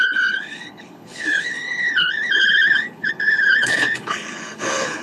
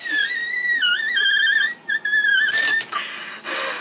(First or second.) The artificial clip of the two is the first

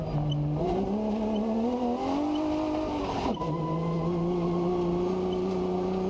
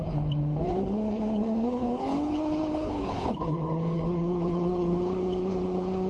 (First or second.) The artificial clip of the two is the second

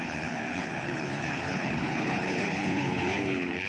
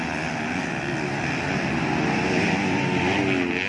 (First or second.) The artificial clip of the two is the first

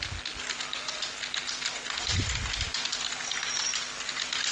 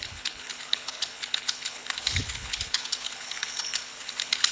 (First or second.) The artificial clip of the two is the second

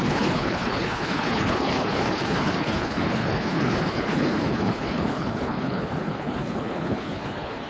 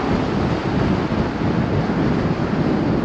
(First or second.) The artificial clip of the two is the first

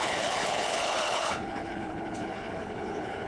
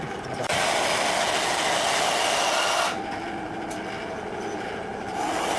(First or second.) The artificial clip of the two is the first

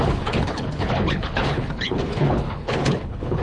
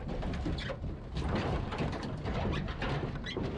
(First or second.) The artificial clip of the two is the first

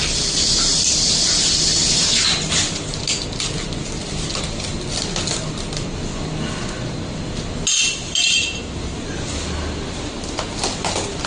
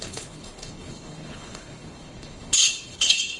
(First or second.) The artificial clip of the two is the second